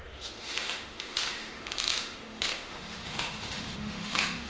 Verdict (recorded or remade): remade